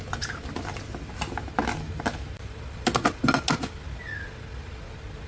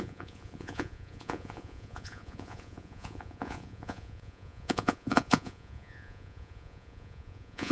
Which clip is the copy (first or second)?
second